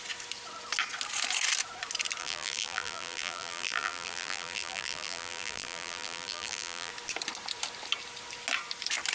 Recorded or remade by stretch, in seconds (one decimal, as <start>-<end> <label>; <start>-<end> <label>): 0.0-2.2 recorded; 2.2-6.9 remade; 6.9-9.1 recorded